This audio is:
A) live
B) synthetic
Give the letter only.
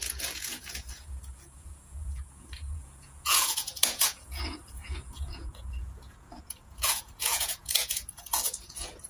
B